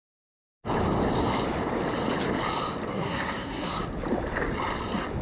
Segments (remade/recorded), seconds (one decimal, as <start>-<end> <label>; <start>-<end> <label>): 0.0-2.9 recorded; 2.9-3.8 remade; 3.8-5.2 recorded